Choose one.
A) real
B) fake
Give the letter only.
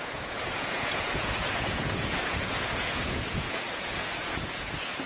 B